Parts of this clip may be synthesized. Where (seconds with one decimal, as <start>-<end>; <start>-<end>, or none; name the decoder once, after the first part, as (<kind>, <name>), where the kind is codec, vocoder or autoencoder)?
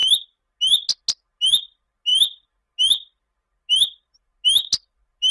none